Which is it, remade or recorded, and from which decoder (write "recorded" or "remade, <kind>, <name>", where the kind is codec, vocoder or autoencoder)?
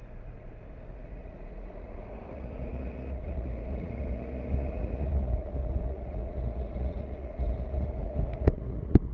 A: remade, vocoder, Vocos